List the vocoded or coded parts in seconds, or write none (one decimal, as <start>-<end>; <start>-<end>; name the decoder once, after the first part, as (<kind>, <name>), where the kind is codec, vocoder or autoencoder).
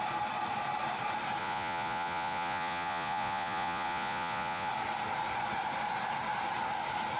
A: 1.4-4.7 (vocoder, Vocos)